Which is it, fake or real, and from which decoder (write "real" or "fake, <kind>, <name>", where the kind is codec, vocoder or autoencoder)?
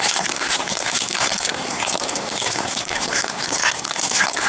fake, codec, SNAC